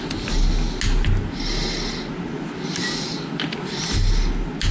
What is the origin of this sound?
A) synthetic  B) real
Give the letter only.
B